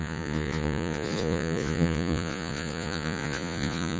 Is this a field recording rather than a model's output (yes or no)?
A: no